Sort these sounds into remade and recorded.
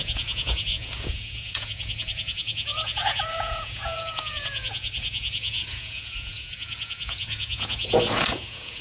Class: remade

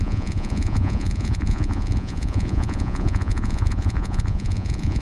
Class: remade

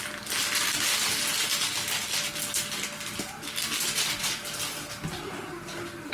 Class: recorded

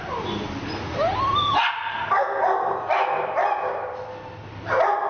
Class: recorded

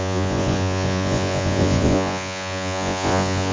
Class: remade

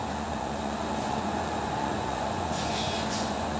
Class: remade